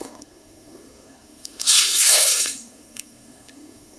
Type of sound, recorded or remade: remade